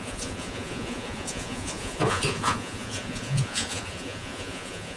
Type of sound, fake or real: fake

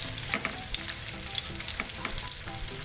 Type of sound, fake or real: fake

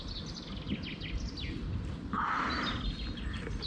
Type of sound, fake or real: real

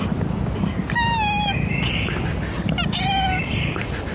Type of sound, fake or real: real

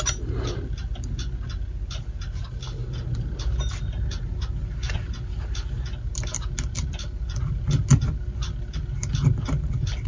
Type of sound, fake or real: real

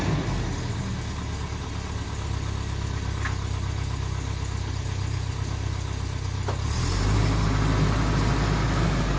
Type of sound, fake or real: real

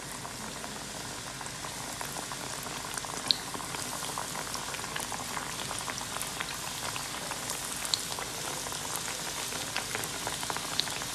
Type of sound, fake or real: real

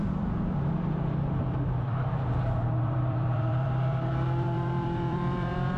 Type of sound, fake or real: fake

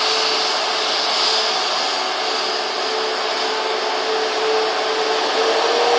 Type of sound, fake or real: real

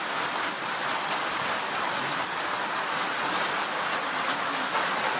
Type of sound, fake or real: real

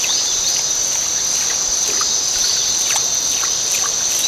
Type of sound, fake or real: real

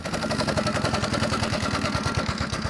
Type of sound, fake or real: fake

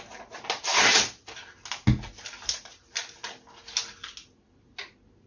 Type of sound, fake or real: real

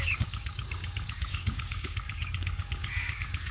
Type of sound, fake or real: fake